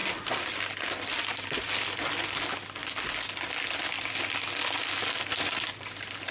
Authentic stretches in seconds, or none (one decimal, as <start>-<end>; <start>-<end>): 0.0-6.3